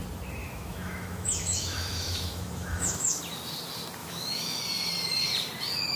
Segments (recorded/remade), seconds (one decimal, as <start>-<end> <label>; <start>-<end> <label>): 0.0-0.4 recorded; 0.4-3.2 remade; 3.2-4.0 recorded; 4.0-4.6 remade; 4.6-6.0 recorded